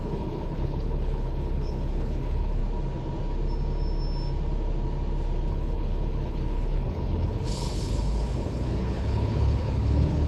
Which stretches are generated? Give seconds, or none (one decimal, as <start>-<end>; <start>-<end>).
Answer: 0.0-2.6; 5.5-10.3